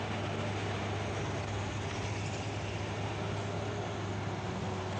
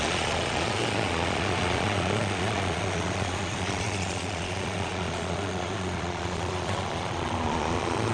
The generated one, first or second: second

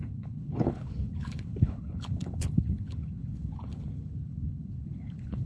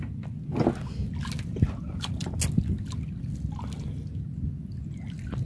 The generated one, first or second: first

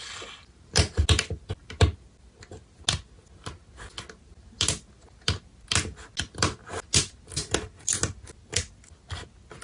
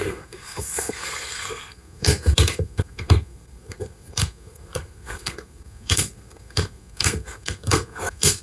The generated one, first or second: second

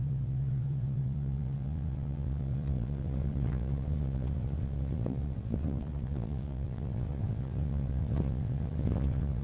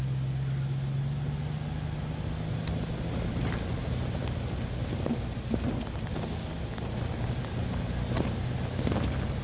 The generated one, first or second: first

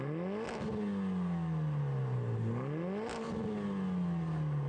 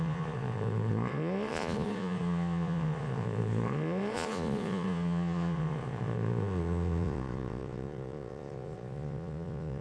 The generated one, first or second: second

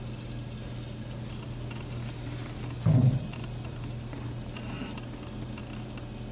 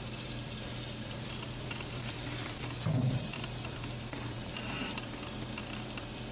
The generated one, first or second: second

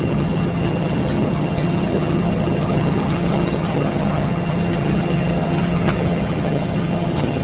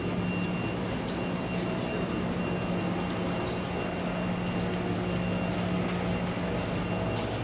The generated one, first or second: first